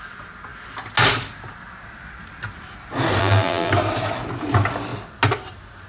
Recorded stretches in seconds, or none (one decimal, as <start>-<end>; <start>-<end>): 0.0-3.2; 3.7-5.9